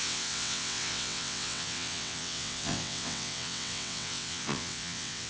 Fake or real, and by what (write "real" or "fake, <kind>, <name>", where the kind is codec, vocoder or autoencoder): fake, vocoder, WaveNeXt